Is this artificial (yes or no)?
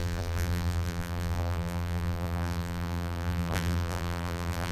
yes